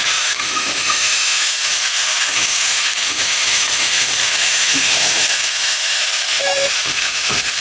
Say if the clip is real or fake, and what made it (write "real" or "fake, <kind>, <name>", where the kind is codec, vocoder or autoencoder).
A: fake, autoencoder, DAC-VAE